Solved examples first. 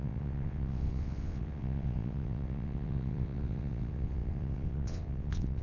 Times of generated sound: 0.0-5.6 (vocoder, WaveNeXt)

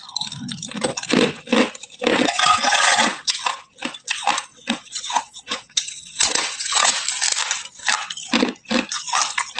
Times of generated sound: 2.1-3.7 (vocoder, WaveNeXt); 4.5-6.9